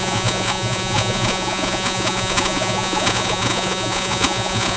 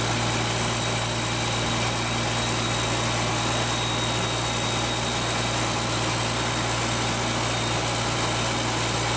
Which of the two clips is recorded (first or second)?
second